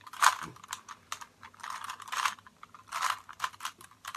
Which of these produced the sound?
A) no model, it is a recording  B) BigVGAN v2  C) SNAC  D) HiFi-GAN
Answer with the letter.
B